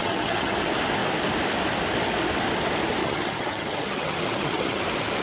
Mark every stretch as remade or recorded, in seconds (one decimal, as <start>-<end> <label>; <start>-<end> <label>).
0.0-0.6 remade; 0.6-3.0 recorded; 3.0-4.8 remade; 4.8-5.2 recorded

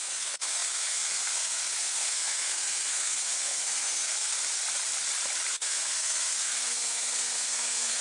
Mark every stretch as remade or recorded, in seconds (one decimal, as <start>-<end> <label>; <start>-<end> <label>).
0.0-4.3 remade; 4.3-5.5 recorded; 5.5-8.0 remade

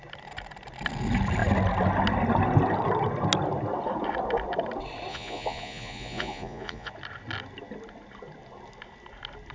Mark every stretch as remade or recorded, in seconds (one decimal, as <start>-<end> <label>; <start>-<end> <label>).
0.0-5.1 recorded; 5.1-6.9 remade; 6.9-9.5 recorded

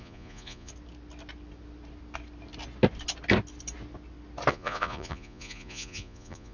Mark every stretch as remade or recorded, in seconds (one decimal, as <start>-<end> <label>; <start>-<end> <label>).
0.0-0.7 remade; 0.7-4.5 recorded; 4.5-6.5 remade

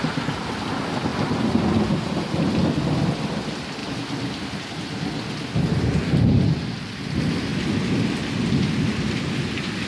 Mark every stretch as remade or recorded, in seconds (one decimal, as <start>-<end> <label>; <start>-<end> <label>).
0.0-9.9 recorded

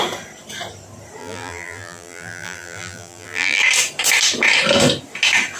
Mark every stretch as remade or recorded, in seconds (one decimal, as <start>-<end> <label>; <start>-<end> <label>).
0.0-1.2 recorded; 1.2-3.6 remade; 3.6-5.6 recorded